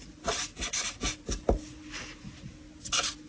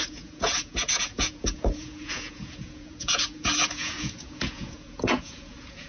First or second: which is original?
first